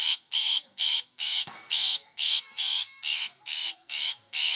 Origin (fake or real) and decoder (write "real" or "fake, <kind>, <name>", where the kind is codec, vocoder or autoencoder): fake, codec, SNAC